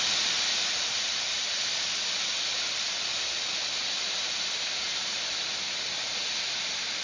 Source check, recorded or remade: recorded